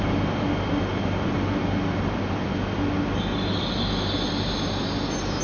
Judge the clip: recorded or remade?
recorded